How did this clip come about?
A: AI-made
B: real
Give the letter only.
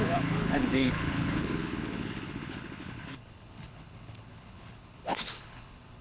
A